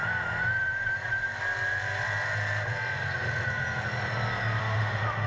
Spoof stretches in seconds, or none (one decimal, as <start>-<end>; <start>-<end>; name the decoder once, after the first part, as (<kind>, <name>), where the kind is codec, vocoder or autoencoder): 4.6-5.3 (autoencoder, DAC-VAE)